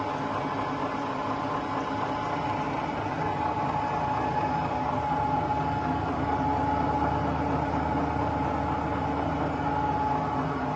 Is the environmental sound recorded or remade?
recorded